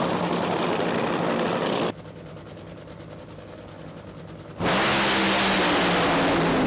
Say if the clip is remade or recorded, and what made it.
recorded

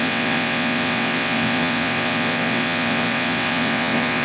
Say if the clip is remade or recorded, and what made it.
remade, vocoder, WaveNeXt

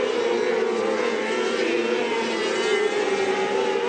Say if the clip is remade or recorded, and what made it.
recorded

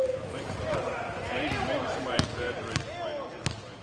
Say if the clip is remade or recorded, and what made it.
recorded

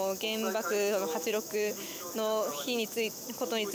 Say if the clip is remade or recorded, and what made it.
remade, autoencoder, DAC-VAE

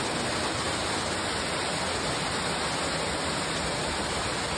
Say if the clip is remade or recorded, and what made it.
recorded